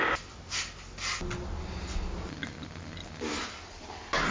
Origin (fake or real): real